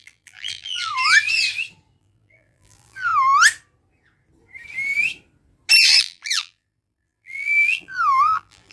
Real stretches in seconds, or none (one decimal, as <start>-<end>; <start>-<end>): 0.9-2.0; 3.1-6.0